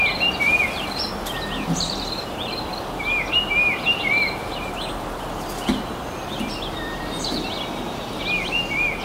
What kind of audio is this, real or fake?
real